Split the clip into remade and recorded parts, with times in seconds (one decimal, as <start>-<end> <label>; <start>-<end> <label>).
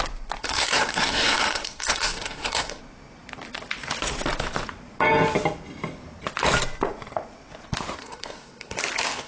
0.0-0.4 recorded; 0.4-2.8 remade; 2.8-8.0 recorded; 8.0-8.8 remade; 8.8-9.3 recorded